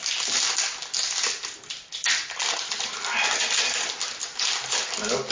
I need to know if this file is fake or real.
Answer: real